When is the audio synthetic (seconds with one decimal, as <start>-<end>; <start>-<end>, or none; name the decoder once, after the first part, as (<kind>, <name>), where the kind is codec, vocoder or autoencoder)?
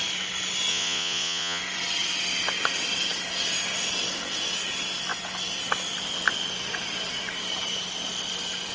0.7-1.6 (vocoder, Vocos)